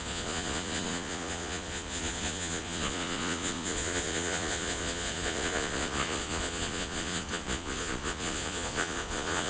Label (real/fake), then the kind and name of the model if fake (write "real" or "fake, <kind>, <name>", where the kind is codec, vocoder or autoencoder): fake, vocoder, Vocos